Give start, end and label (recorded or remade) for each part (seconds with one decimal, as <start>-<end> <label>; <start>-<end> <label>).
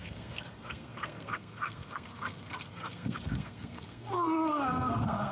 0.0-5.3 remade